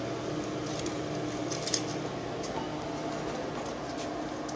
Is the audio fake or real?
real